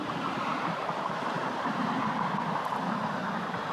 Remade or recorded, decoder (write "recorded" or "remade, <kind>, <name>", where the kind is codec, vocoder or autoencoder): remade, vocoder, BigVGAN v2